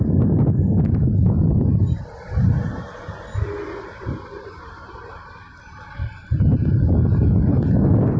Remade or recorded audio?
recorded